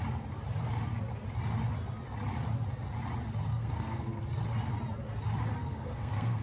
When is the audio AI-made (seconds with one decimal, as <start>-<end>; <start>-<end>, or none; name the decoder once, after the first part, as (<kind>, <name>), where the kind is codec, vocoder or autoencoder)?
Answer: 3.5-4.2 (codec, SNAC); 5.6-6.4